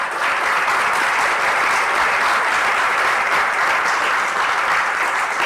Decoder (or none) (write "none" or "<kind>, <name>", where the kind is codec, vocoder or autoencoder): none